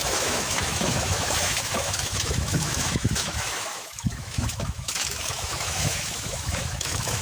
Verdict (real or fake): fake